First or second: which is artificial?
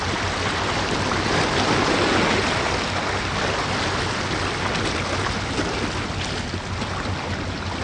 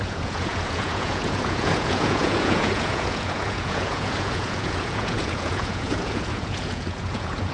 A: second